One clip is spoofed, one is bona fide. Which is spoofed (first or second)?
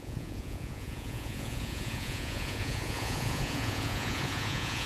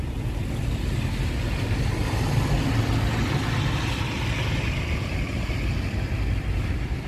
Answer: first